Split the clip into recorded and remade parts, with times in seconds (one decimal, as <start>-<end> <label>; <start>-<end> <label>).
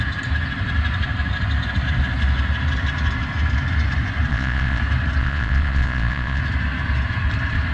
0.0-4.3 recorded; 4.3-4.8 remade; 4.8-5.2 recorded; 5.2-6.4 remade; 6.4-7.7 recorded